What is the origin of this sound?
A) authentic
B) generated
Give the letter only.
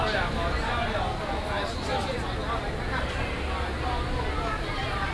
A